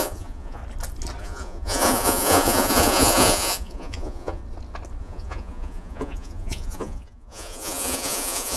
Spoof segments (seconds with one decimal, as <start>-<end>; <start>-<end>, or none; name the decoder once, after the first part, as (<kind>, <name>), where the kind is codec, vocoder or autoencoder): 0.0-0.6 (vocoder, Vocos); 1.2-4.4; 5.0-8.6